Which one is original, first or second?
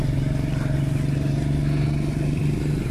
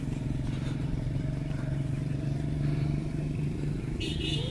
first